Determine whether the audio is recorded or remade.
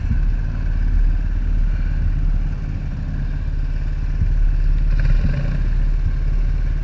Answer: recorded